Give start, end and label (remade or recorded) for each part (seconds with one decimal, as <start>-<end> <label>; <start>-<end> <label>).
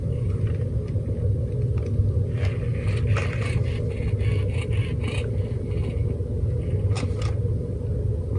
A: 0.0-8.4 recorded